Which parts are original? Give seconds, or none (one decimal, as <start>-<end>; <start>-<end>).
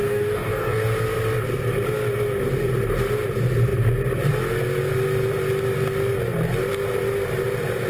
0.9-7.9